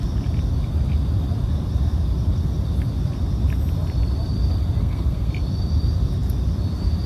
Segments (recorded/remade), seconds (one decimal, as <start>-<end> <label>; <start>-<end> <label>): 0.0-4.8 recorded; 4.8-5.3 remade; 5.3-7.1 recorded